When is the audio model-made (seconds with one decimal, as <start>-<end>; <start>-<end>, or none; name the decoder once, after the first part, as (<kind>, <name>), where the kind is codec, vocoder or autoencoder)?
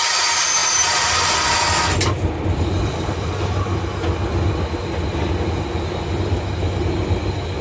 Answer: none